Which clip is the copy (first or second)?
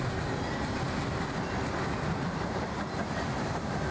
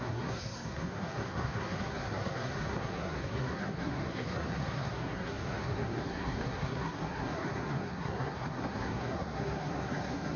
second